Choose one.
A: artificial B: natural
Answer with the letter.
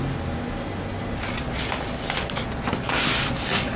B